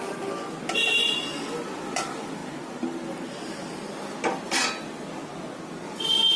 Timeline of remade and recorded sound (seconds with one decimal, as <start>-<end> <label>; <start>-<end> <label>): 0.0-6.4 recorded